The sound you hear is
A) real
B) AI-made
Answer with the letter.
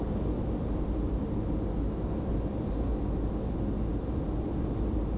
A